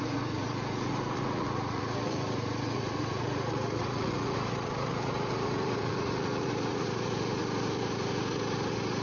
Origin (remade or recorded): remade